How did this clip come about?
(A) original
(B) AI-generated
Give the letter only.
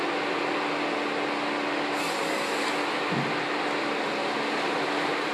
A